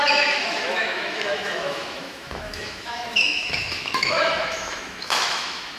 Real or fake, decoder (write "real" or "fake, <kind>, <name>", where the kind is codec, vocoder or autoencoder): fake, autoencoder, DAC-VAE